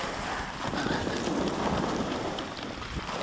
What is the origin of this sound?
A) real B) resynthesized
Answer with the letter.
B